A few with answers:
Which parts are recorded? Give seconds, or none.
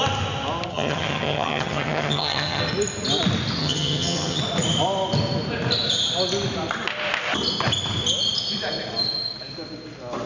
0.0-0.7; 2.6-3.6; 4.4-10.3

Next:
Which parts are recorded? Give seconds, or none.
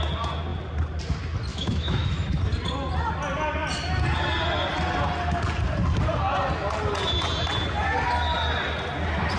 0.0-1.5; 2.4-9.4